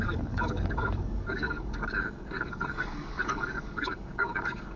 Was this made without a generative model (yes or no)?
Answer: no